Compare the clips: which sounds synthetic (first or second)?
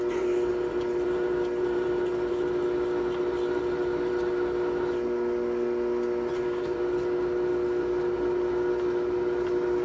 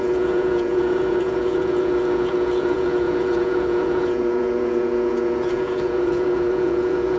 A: second